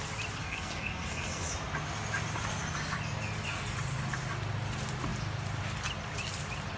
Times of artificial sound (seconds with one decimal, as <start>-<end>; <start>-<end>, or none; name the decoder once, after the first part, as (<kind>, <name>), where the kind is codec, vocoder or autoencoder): 0.4-1.5 (codec, SNAC)